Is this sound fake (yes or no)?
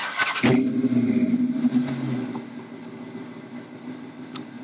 no